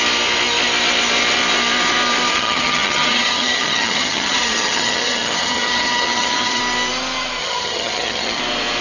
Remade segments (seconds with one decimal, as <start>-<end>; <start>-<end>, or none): 2.3-6.6; 7.4-8.4